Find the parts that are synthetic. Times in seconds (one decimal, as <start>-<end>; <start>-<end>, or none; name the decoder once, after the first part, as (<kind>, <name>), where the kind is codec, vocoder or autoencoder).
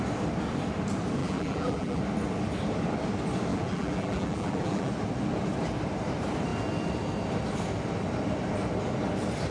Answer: 1.2-2.0 (vocoder, BigVGAN v2); 3.5-4.9